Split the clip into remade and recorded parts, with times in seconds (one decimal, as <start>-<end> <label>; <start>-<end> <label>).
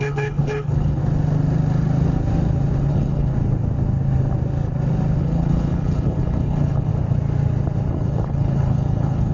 0.0-1.0 remade; 1.0-2.9 recorded; 2.9-3.3 remade; 3.3-5.2 recorded; 5.2-6.9 remade; 6.9-7.9 recorded; 7.9-9.3 remade